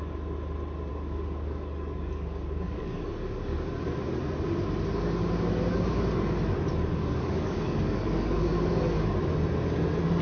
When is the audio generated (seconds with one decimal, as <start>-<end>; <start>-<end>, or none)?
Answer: 0.9-3.8; 6.9-8.8